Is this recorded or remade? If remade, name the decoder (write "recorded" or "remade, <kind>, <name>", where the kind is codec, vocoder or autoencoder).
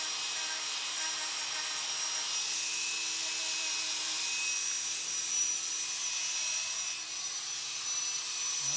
remade, vocoder, BigVGAN v2